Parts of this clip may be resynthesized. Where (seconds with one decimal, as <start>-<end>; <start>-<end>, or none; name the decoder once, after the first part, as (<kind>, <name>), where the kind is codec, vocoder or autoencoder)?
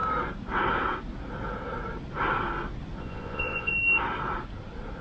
3.0-3.7 (vocoder, Vocos)